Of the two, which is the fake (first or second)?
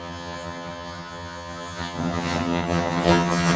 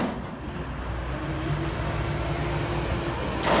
first